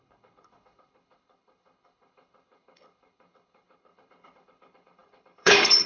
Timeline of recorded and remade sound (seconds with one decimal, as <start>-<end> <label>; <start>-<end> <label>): 0.0-5.9 remade